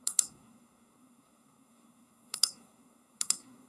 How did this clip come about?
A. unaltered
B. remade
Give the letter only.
B